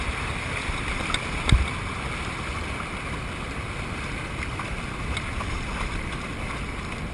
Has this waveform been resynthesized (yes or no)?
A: no